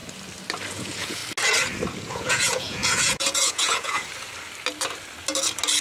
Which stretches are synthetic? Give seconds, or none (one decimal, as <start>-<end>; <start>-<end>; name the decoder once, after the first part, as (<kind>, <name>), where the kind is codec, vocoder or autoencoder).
0.7-1.2 (vocoder, Vocos); 2.0-4.1